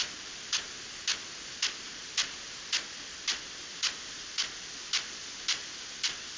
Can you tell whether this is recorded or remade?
recorded